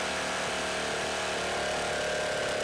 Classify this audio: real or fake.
real